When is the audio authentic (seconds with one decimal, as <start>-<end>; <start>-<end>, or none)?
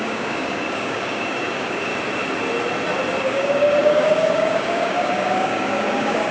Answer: 1.9-3.2